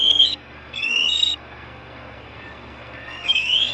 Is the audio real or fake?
fake